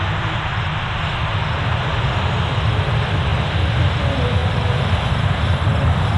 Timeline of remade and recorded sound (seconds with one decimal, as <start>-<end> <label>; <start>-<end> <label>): 0.0-3.3 recorded; 3.3-4.0 remade; 4.0-4.4 recorded; 4.4-5.1 remade; 5.1-6.2 recorded